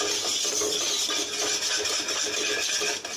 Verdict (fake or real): real